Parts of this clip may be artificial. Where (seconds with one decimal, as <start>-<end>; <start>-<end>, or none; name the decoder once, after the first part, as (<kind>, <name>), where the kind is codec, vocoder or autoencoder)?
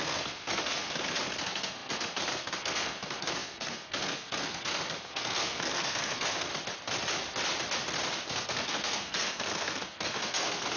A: 0.0-6.5 (codec, SNAC); 8.3-10.8